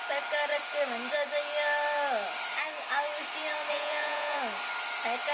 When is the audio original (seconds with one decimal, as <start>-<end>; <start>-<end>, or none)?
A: 0.0-3.7; 4.4-5.3